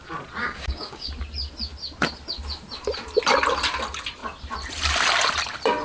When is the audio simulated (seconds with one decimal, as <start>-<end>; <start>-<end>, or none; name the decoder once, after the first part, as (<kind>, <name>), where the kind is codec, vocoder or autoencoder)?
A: 0.4-1.1 (codec, DAC)